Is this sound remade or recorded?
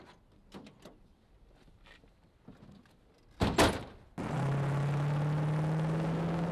recorded